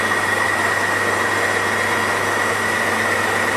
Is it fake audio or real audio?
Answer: real